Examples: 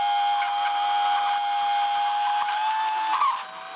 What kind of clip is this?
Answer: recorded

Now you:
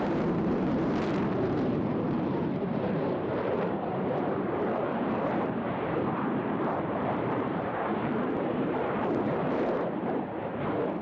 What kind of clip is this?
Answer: remade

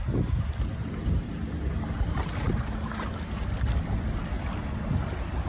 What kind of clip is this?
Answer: recorded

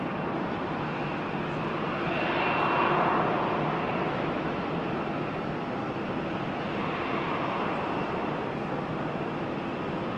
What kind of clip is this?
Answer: recorded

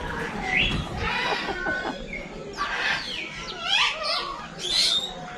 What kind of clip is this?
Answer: recorded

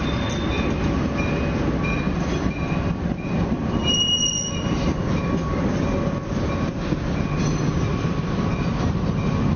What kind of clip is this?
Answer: recorded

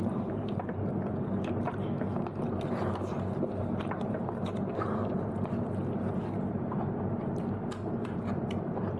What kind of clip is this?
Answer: remade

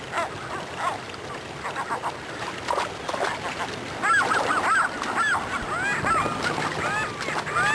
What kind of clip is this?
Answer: recorded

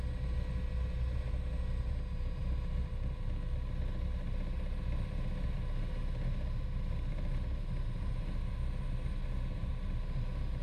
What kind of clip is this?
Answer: recorded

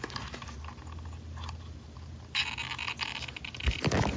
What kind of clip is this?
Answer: recorded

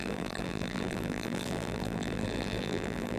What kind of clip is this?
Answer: remade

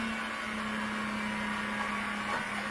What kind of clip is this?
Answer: recorded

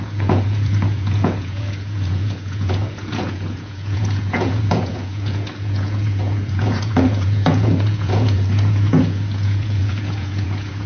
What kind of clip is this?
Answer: remade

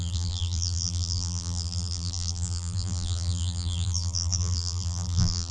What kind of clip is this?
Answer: remade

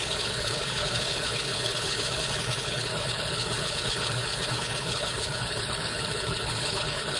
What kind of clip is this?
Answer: remade